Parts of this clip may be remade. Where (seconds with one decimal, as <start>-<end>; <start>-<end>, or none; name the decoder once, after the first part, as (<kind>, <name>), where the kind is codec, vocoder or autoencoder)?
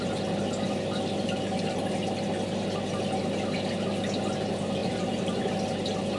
4.8-5.4 (vocoder, BigVGAN v2)